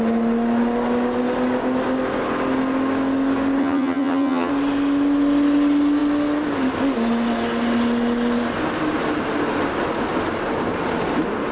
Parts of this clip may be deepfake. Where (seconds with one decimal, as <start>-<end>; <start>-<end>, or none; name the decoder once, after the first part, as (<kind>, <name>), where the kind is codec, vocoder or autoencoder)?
3.6-4.5 (vocoder, HiFi-GAN)